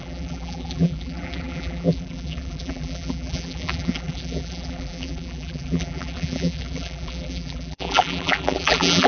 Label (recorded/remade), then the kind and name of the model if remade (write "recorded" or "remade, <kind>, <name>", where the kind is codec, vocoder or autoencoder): remade, vocoder, BigVGAN v2